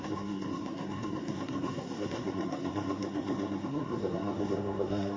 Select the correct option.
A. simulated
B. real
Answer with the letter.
A